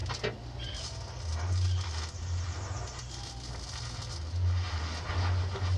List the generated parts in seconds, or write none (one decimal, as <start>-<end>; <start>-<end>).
none